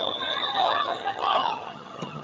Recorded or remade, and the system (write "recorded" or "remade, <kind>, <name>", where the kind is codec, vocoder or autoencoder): remade, vocoder, HiFi-GAN